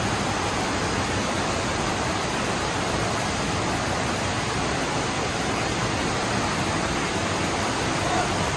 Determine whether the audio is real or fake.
real